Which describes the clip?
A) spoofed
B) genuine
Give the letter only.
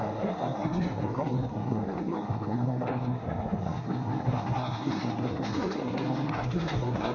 A